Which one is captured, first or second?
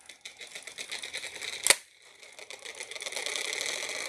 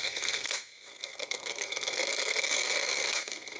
first